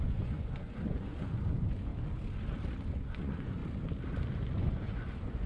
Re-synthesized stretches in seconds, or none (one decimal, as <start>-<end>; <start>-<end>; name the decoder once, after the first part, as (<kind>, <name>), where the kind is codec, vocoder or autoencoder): 0.0-1.9 (vocoder, Vocos); 2.8-3.6; 4.6-5.5